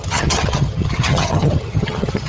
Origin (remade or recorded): remade